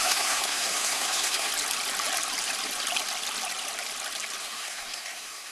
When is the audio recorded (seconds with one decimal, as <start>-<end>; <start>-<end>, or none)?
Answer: 1.5-4.4